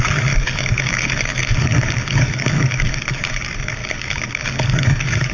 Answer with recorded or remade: remade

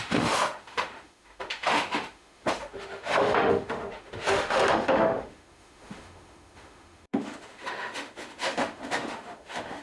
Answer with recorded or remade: remade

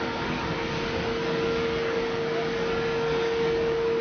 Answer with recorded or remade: remade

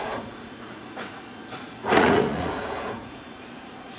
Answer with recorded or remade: remade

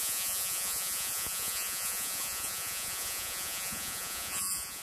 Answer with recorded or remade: remade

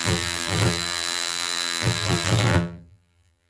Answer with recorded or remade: remade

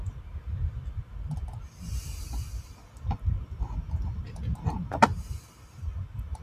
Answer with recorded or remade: recorded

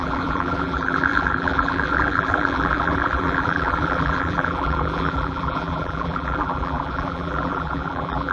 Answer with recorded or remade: remade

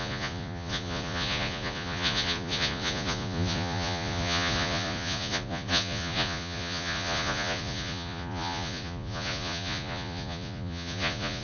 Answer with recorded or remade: remade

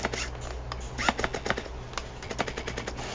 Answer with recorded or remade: recorded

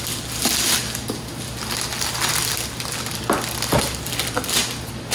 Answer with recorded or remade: recorded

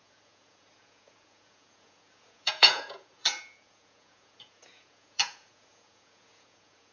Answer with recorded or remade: remade